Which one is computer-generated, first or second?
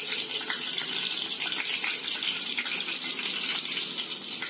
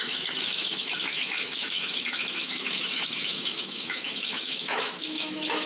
second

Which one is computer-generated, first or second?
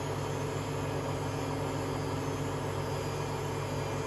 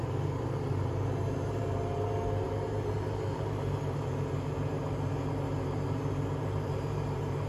second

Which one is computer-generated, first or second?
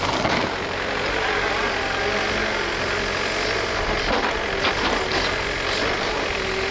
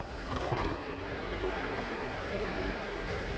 second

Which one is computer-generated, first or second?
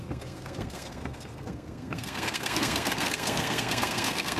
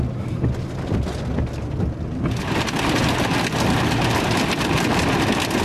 first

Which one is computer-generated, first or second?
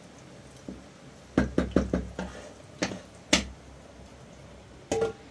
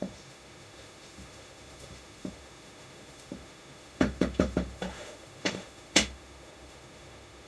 second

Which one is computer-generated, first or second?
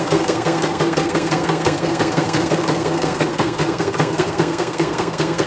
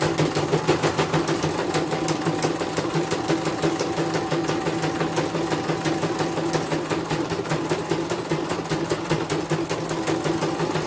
first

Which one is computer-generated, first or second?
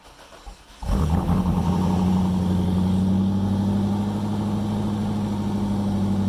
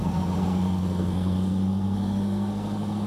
second